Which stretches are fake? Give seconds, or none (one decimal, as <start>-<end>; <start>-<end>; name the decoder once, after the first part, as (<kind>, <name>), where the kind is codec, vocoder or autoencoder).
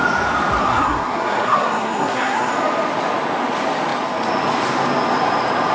0.6-2.5 (codec, SNAC)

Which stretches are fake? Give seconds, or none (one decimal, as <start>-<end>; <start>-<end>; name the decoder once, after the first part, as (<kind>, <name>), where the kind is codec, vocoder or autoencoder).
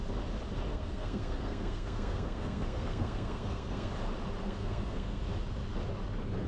0.7-3.9 (codec, SNAC); 4.4-5.2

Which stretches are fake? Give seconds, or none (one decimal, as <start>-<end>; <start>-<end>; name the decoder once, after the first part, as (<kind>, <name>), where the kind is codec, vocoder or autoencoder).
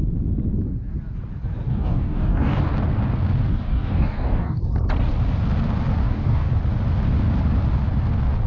1.7-2.6 (codec, DAC); 3.5-4.6; 6.0-6.5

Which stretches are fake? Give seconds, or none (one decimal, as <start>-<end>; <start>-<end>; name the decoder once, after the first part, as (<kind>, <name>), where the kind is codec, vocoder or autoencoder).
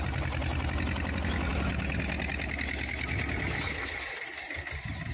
none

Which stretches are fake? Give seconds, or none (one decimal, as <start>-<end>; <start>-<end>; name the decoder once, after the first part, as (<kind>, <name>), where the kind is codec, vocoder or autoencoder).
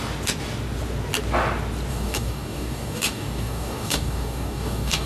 1.9-5.1 (codec, DAC)